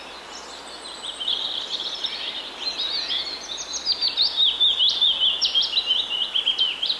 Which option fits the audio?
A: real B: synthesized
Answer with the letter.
A